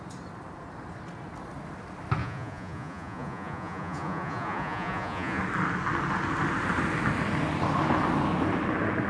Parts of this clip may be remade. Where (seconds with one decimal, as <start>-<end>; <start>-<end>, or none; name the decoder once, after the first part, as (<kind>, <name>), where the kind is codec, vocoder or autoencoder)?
2.2-5.4 (vocoder, Vocos)